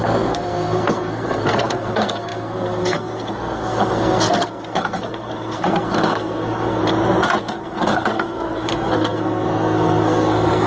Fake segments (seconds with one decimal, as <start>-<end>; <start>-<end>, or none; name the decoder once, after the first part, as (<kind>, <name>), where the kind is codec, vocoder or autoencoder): 0.0-6.8 (codec, SNAC); 7.4-10.7